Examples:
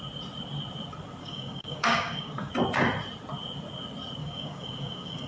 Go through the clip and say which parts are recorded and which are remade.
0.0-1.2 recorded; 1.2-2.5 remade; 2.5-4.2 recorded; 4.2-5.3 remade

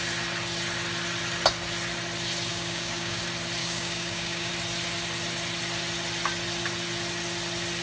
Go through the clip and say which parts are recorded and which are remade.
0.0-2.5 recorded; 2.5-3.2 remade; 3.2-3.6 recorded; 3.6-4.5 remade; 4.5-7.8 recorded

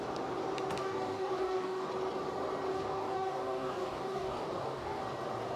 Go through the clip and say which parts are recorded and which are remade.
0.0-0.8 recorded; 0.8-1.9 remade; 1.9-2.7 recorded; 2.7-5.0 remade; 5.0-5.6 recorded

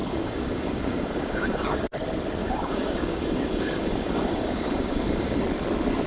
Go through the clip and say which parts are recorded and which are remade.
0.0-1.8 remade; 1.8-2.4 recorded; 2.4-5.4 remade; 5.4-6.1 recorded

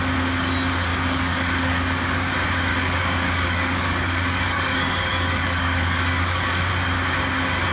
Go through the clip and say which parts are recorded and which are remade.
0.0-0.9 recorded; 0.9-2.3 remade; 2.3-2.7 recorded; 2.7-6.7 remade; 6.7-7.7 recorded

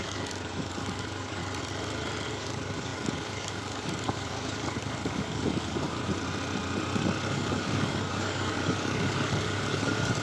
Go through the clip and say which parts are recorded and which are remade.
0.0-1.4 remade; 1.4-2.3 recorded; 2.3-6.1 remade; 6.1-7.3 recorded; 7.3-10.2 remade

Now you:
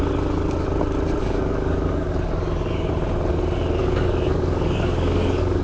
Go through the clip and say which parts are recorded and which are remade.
0.0-1.2 recorded; 1.2-2.9 remade; 2.9-3.8 recorded; 3.8-5.6 remade